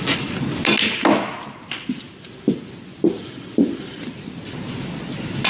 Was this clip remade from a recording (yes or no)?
no